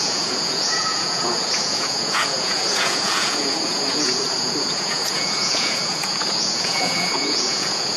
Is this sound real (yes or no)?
no